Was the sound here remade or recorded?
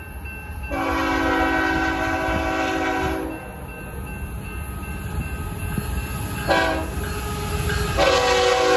recorded